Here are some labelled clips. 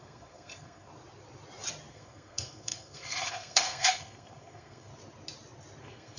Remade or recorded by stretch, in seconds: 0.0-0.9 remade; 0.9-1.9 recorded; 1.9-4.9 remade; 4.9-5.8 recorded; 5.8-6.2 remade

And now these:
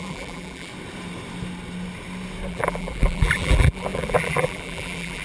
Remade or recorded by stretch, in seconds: 0.0-0.7 remade; 0.7-2.5 recorded; 2.5-5.2 remade

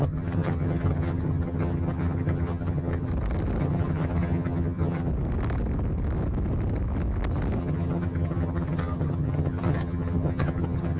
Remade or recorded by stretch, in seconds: 0.0-3.1 remade; 3.1-3.6 recorded; 3.6-5.1 remade; 5.1-7.6 recorded; 7.6-11.0 remade

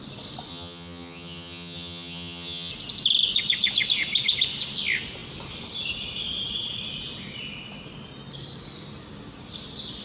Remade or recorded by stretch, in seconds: 0.0-0.5 recorded; 0.5-2.7 remade; 2.7-10.0 recorded

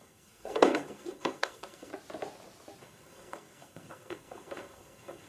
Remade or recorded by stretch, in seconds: 0.0-1.9 remade; 1.9-2.8 recorded; 2.8-5.3 remade

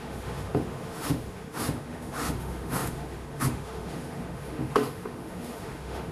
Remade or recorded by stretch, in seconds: 0.0-6.1 remade

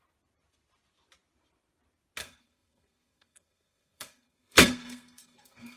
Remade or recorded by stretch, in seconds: 0.0-2.2 recorded; 2.2-5.8 remade